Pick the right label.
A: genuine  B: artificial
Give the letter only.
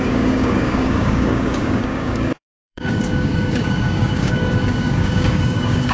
B